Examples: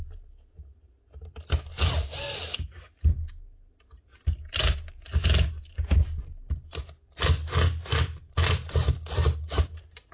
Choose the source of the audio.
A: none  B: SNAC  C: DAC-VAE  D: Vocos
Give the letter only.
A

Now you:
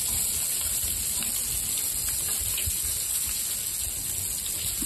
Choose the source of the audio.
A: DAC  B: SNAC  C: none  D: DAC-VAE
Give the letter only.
C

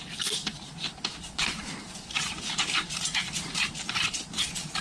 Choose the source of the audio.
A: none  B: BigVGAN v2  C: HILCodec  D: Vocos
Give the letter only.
B